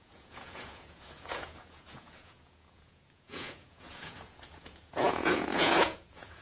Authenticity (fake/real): fake